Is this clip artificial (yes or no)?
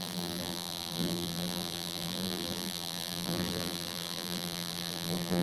yes